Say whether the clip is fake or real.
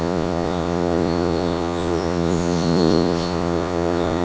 fake